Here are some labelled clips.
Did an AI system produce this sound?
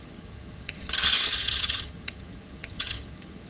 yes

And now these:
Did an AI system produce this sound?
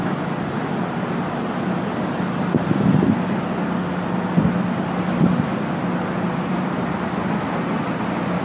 no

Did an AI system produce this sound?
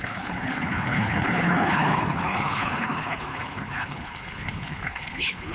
yes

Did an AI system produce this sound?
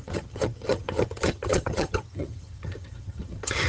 yes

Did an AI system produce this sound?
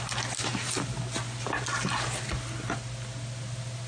no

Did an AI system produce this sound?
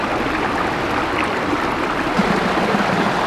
no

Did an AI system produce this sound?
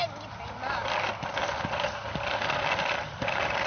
no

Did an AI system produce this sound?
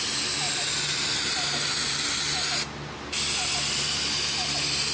no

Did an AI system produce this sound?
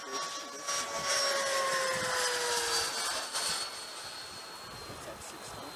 no